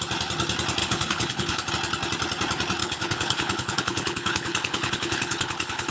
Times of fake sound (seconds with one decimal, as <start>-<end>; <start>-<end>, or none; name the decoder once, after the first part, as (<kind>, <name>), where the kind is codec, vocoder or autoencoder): 0.8-1.7 (codec, HILCodec); 2.8-5.9